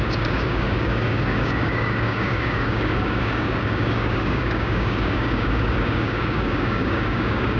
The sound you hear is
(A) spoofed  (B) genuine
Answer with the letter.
A